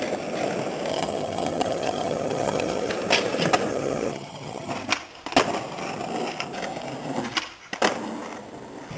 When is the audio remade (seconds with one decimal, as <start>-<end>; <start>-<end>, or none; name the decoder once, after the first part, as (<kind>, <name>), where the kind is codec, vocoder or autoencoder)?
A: 0.9-2.9 (vocoder, HiFi-GAN); 3.7-4.7